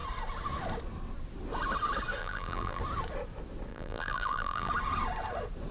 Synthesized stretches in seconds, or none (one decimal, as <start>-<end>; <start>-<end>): 2.2-2.8; 3.7-4.7